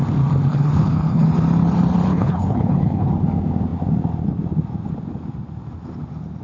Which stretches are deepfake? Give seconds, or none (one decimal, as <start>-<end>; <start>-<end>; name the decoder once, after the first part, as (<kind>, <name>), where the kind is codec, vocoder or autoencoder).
0.5-1.3 (codec, HILCodec); 2.1-3.1